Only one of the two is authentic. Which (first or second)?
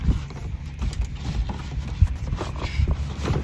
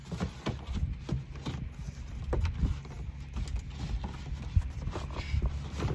second